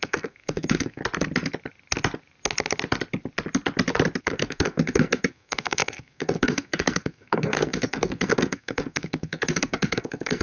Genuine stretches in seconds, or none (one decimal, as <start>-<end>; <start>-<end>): 1.0-4.2